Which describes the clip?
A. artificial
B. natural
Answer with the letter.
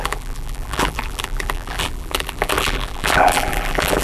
A